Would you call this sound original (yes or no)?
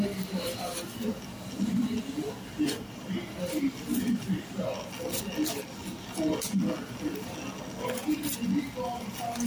yes